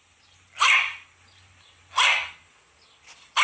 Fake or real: real